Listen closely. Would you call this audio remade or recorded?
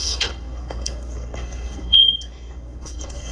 remade